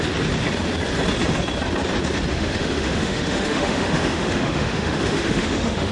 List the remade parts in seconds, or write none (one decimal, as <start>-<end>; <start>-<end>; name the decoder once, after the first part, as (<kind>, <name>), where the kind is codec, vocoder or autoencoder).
2.3-5.9 (autoencoder, DAC-VAE)